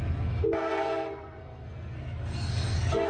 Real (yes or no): no